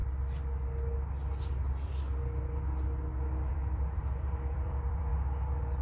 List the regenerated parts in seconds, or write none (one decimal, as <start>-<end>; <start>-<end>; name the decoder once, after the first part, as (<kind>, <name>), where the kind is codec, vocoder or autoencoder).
3.5-5.1 (vocoder, BigVGAN v2)